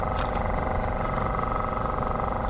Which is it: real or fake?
real